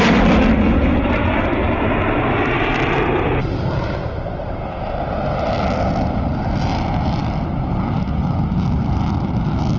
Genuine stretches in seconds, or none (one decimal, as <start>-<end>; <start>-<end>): 0.0-9.8